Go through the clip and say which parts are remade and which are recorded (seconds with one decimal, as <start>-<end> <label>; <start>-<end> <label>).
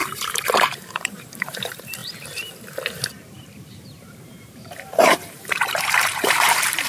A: 0.0-2.0 remade; 2.0-4.0 recorded; 4.0-6.9 remade